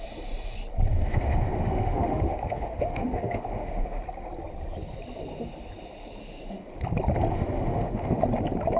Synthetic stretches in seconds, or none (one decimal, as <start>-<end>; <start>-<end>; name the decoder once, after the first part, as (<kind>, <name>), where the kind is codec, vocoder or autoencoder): 0.9-4.0 (autoencoder, DAC-VAE); 6.2-6.7; 7.3-8.2